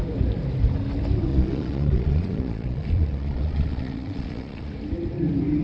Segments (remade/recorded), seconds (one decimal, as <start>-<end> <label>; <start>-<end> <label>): 0.0-1.3 recorded; 1.3-4.7 remade; 4.7-5.6 recorded